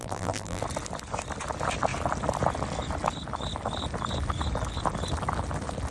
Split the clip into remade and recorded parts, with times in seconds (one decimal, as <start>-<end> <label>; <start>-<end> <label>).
0.0-0.6 remade; 0.6-5.9 recorded